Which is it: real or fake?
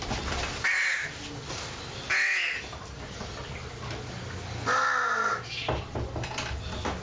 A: real